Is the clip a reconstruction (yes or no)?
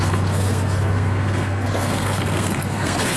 yes